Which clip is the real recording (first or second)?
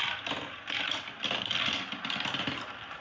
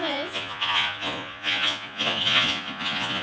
first